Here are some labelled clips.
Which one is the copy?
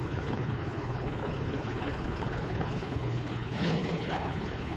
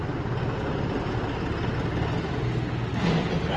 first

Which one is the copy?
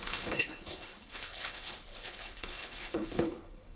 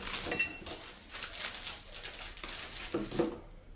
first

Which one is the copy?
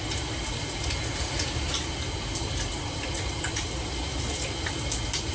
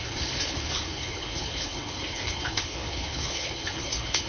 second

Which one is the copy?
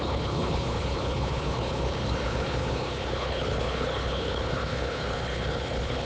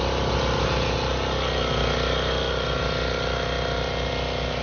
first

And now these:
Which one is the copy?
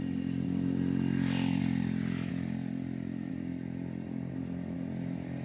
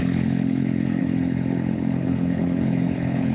second